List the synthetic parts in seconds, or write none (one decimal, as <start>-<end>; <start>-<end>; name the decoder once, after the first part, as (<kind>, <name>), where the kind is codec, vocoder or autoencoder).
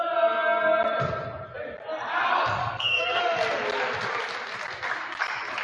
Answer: 2.6-3.2 (codec, SNAC)